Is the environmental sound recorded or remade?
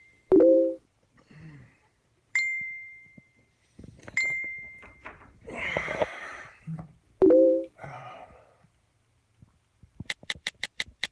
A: remade